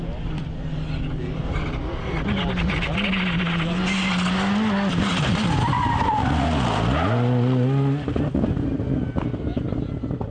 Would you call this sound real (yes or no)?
yes